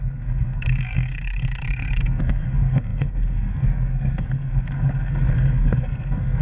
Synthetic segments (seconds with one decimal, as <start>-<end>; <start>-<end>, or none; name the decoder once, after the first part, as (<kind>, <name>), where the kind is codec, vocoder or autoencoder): 0.0-6.4 (codec, SNAC)